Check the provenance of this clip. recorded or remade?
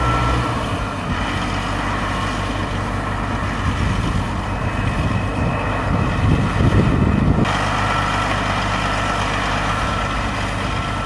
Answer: recorded